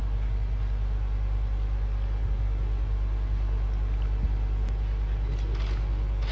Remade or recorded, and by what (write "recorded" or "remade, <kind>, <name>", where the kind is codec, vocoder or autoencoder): recorded